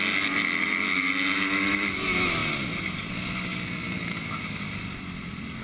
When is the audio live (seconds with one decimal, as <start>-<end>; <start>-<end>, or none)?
0.0-5.6